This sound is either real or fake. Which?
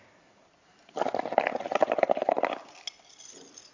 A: real